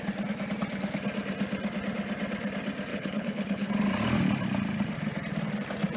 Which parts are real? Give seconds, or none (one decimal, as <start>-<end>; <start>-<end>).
0.0-2.9; 3.7-6.0